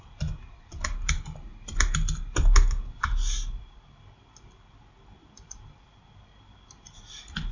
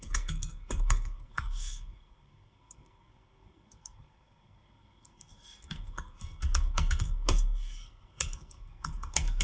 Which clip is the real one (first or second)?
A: first